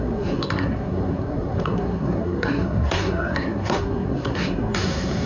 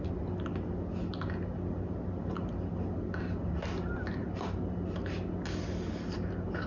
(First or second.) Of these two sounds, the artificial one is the first